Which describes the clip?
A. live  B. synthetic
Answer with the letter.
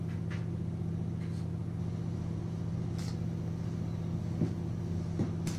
A